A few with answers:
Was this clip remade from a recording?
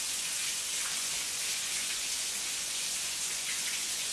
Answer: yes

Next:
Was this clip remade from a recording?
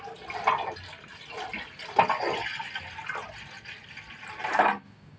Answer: no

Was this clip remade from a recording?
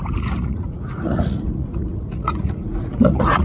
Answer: yes